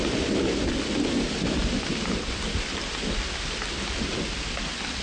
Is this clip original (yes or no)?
yes